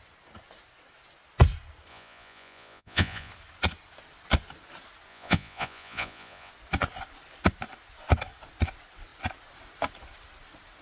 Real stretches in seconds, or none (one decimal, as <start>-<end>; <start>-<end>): 0.0-1.9; 3.3-5.1; 6.5-10.8